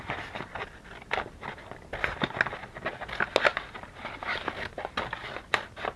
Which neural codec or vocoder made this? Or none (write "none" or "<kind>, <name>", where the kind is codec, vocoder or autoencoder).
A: none